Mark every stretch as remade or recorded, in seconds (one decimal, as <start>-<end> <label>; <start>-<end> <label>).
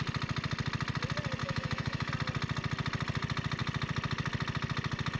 0.0-1.4 recorded; 1.4-2.1 remade; 2.1-5.2 recorded